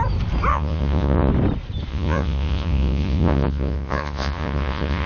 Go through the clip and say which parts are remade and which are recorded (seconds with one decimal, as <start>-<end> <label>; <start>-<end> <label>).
0.0-0.5 recorded; 0.5-1.3 remade; 1.3-1.9 recorded; 1.9-5.1 remade